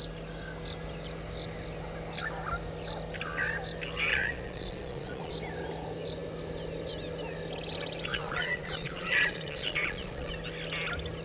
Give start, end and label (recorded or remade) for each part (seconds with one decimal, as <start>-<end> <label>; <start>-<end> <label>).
0.0-4.1 recorded; 4.1-5.3 remade; 5.3-8.1 recorded; 8.1-10.3 remade; 10.3-11.2 recorded